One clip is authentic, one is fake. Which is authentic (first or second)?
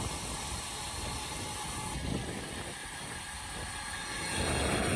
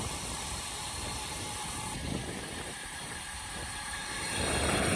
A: first